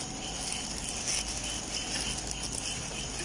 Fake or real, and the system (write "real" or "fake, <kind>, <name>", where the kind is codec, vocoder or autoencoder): real